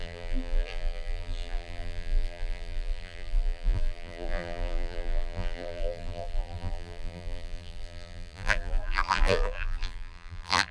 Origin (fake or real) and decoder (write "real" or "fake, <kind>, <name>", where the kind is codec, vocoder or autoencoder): fake, vocoder, BigVGAN v2